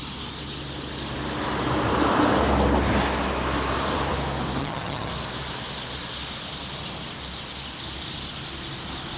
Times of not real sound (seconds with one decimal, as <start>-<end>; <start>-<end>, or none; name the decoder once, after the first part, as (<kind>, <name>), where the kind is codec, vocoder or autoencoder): 4.6-5.1 (vocoder, HiFi-GAN)